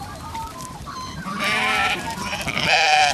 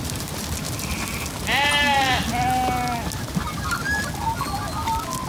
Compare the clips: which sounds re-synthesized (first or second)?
first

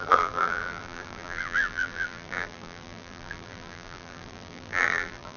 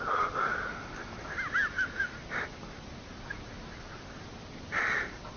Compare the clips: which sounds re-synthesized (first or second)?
first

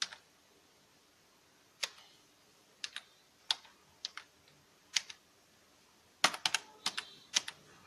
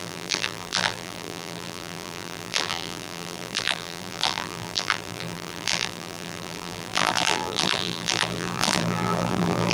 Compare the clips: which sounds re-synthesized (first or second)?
second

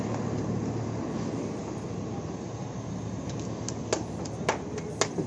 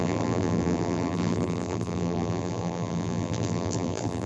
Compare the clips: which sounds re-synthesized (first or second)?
second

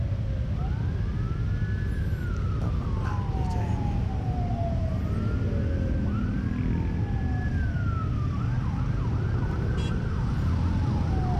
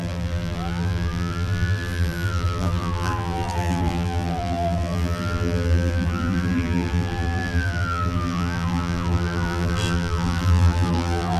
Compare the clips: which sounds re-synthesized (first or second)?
second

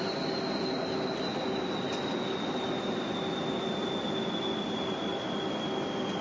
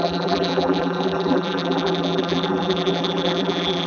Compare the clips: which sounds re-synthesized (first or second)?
second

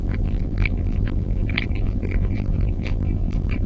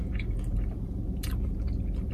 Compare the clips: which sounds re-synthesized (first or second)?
first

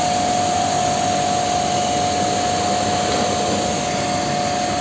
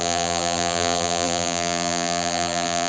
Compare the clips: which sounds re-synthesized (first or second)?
second